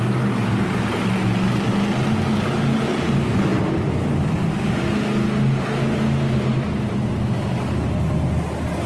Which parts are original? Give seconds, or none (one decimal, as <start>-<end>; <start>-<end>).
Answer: 0.0-8.9